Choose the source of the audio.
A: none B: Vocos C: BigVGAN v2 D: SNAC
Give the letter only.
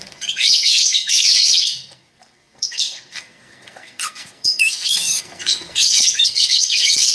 D